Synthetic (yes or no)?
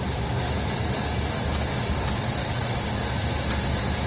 no